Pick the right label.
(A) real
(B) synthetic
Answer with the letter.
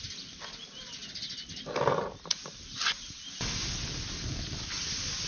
A